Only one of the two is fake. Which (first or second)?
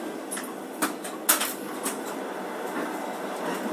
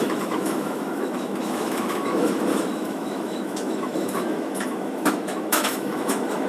second